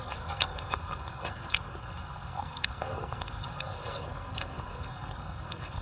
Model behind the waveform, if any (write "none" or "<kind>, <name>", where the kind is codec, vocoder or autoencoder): codec, SNAC